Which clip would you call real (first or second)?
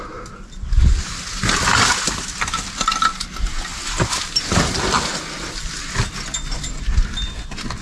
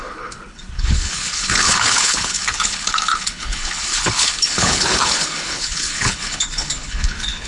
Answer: first